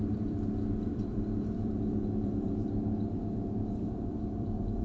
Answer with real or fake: fake